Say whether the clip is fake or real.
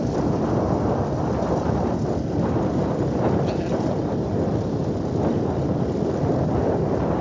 real